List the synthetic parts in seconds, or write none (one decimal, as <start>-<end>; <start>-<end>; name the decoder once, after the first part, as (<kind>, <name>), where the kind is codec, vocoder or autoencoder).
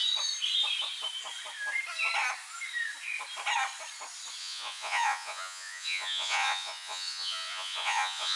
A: 4.4-8.4 (vocoder, Vocos)